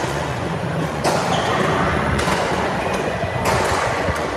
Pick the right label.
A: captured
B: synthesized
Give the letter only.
B